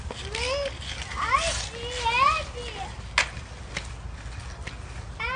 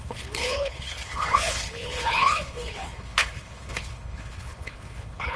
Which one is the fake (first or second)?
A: second